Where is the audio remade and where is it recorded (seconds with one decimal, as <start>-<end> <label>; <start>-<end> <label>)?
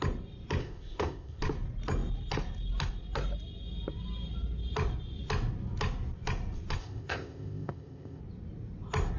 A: 0.0-0.6 recorded; 0.6-1.4 remade; 1.4-6.8 recorded; 6.8-8.2 remade; 8.2-9.2 recorded